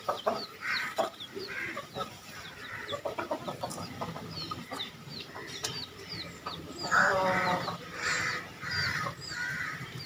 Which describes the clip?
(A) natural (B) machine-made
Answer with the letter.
B